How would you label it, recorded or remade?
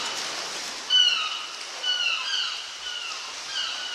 recorded